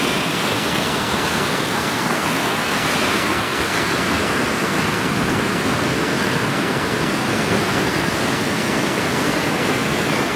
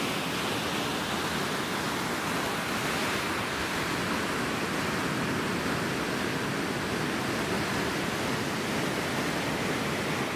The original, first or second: second